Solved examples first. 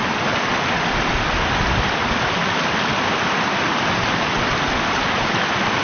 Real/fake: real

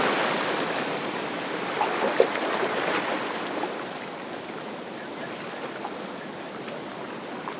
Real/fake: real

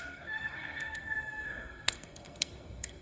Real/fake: fake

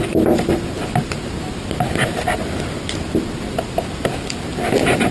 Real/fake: real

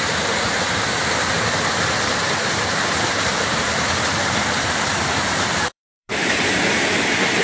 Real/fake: fake